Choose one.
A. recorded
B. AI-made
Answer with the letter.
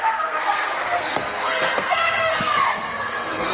B